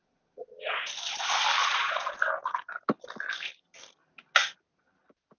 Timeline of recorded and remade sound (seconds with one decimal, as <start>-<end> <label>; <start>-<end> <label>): 0.0-0.9 remade; 0.9-1.6 recorded; 1.6-2.1 remade; 2.1-5.4 recorded